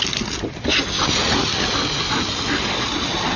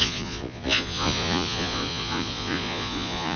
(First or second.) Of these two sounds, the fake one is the second